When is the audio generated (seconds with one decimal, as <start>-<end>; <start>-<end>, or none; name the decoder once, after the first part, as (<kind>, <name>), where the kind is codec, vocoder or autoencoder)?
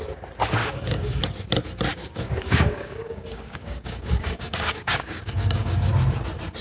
0.6-1.2 (codec, DAC); 1.9-5.9